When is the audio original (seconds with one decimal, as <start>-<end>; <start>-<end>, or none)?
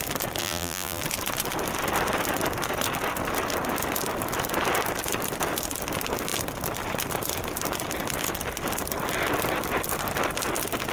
0.0-0.4; 1.0-10.9